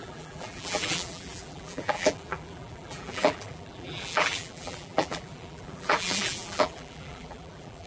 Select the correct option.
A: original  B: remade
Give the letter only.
B